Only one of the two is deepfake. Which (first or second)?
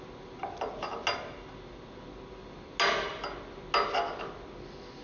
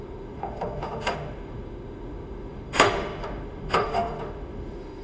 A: second